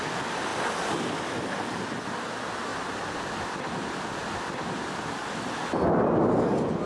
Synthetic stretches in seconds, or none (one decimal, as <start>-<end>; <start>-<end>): 0.5-1.2; 4.2-5.6